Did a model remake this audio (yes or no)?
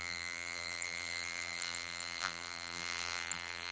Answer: yes